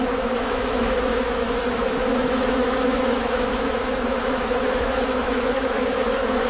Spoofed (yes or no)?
yes